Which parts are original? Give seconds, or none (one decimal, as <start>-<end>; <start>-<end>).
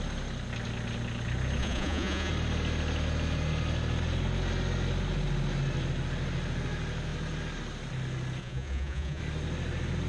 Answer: 0.0-1.6; 2.3-8.4; 9.2-10.1